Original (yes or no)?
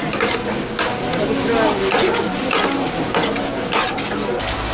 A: yes